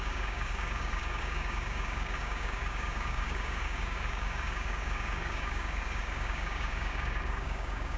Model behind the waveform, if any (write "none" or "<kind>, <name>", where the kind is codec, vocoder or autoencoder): codec, DAC